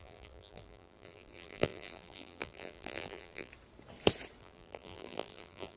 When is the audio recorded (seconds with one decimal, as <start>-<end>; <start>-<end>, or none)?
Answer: 3.5-4.4